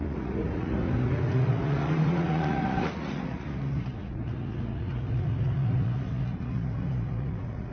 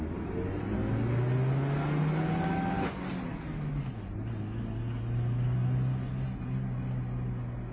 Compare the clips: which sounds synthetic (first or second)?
first